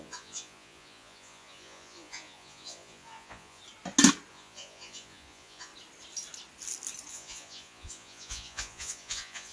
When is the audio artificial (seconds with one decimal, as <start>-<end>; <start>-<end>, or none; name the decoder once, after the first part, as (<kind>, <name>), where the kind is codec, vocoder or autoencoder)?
0.0-3.6 (vocoder, Vocos); 4.3-5.7; 7.1-9.5